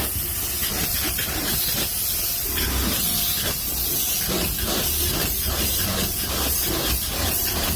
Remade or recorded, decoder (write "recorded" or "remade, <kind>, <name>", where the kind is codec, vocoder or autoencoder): recorded